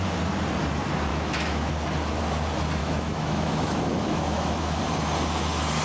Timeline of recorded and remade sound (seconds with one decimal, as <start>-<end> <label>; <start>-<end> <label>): 0.0-1.1 recorded; 1.1-1.7 remade; 1.7-2.8 recorded; 2.8-4.8 remade; 4.8-5.8 recorded